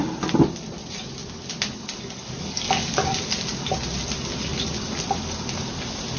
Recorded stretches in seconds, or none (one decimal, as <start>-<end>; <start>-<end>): 0.0-6.2